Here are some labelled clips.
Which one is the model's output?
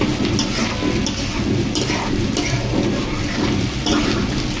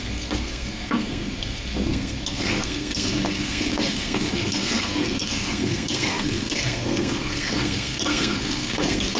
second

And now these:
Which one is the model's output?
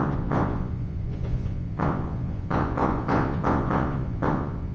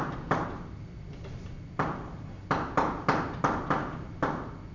first